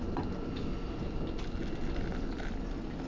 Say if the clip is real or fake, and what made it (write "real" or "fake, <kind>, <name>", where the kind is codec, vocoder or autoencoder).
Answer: real